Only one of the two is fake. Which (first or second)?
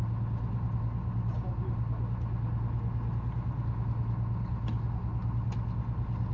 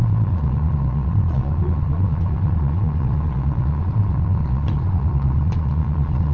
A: second